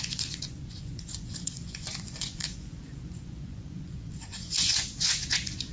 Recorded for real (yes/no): no